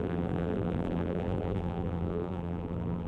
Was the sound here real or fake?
fake